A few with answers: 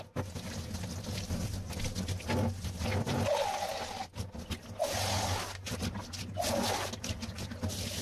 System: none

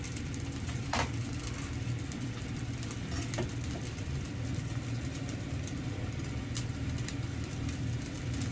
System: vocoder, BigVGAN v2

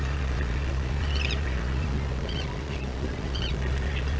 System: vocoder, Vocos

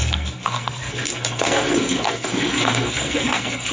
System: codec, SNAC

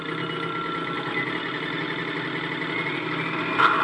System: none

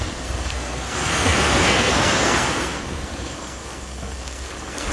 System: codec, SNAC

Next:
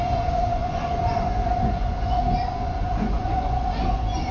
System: vocoder, Vocos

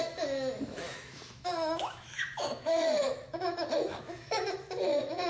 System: autoencoder, DAC-VAE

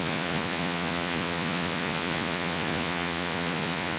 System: vocoder, Vocos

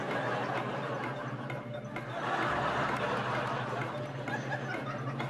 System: none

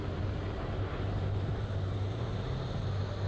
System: none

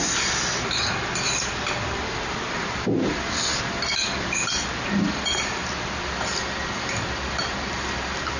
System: vocoder, BigVGAN v2